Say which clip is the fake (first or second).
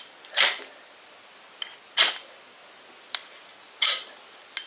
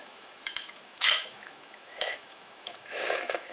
second